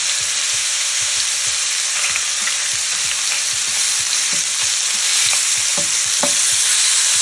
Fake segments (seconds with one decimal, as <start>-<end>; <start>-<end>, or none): 0.5-1.2